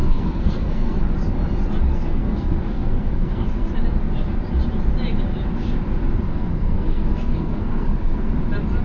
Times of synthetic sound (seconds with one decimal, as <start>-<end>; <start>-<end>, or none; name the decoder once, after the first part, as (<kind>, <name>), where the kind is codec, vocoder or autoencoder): 0.0-1.0 (codec, SNAC); 1.9-3.7; 6.3-8.3